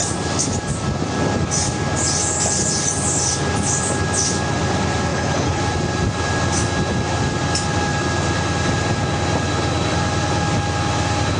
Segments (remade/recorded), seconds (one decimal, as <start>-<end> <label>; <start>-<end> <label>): 0.0-5.1 recorded; 5.1-5.6 remade; 5.6-11.4 recorded